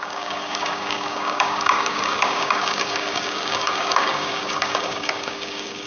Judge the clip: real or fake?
fake